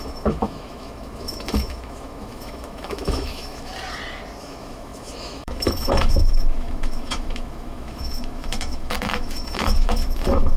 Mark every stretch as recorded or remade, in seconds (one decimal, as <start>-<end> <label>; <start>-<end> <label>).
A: 0.0-3.7 remade; 3.7-4.4 recorded; 4.4-10.6 remade